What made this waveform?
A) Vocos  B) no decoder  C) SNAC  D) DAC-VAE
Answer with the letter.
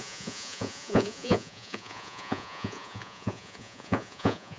A